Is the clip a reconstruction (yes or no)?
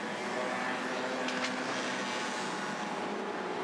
no